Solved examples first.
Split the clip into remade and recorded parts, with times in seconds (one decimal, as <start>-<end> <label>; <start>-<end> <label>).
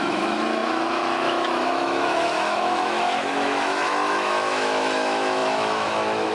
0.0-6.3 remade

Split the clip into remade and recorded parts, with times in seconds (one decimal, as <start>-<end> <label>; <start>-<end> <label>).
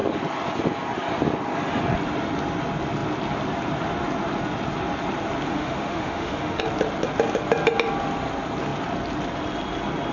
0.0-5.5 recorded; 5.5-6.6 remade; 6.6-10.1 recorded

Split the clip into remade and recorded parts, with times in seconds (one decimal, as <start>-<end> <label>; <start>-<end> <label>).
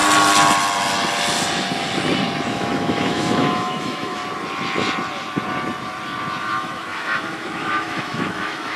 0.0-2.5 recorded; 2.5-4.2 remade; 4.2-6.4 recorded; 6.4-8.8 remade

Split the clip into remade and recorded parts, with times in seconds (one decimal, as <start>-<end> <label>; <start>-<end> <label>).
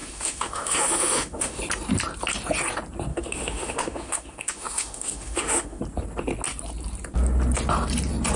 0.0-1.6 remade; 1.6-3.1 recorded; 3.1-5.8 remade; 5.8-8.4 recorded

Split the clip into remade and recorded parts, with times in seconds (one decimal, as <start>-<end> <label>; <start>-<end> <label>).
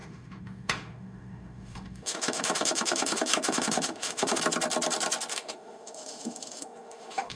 0.0-4.4 remade; 4.4-5.3 recorded; 5.3-7.4 remade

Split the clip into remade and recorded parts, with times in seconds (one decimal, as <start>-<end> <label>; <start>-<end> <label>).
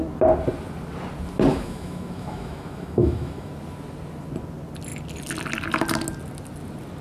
0.0-1.5 recorded; 1.5-3.5 remade; 3.5-7.0 recorded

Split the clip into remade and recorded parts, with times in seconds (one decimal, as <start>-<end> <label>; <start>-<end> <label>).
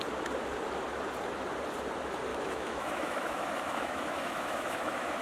0.0-2.3 recorded; 2.3-5.2 remade